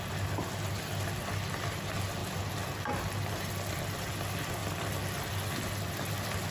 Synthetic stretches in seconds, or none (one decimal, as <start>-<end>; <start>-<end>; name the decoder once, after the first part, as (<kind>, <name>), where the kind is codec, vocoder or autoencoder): none